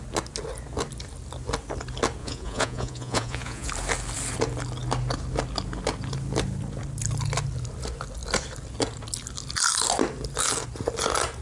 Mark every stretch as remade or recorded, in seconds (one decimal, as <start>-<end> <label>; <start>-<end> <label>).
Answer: 0.0-2.2 recorded; 2.2-3.7 remade; 3.7-11.4 recorded